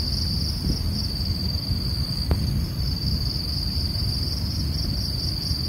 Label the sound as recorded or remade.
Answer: recorded